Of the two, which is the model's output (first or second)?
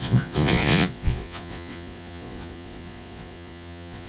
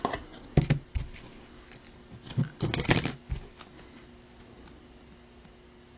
first